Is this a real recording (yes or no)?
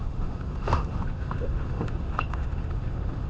no